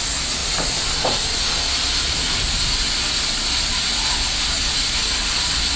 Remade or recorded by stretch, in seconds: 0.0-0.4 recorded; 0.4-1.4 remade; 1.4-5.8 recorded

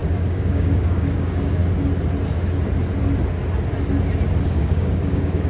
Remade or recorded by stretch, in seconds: 0.0-1.6 remade; 1.6-4.4 recorded; 4.4-5.5 remade

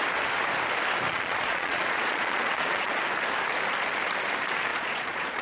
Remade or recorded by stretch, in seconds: 0.0-1.1 recorded; 1.1-3.0 remade; 3.0-4.7 recorded; 4.7-5.4 remade

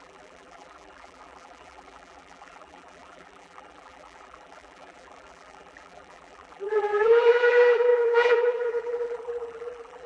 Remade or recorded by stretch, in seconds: 0.0-10.1 remade

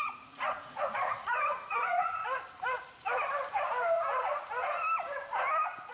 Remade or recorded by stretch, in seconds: 0.0-2.2 remade; 2.2-5.9 recorded

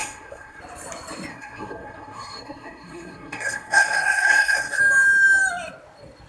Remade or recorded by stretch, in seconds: 0.0-0.6 remade; 0.6-1.3 recorded; 1.3-4.8 remade; 4.8-6.3 recorded

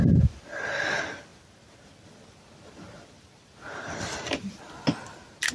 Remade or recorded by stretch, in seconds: 0.0-1.3 recorded; 1.3-4.6 remade; 4.6-5.5 recorded